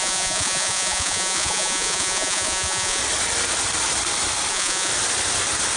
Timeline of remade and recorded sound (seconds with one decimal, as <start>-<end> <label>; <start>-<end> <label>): 0.0-3.0 remade; 3.0-4.5 recorded; 4.5-4.9 remade; 4.9-5.8 recorded